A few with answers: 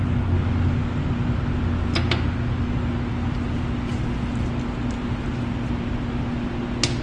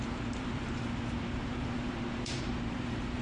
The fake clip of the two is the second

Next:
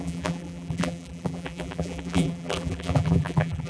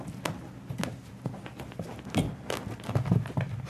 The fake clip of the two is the first